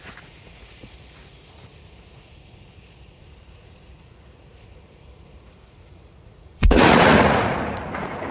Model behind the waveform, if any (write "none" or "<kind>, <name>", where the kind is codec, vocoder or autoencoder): vocoder, Vocos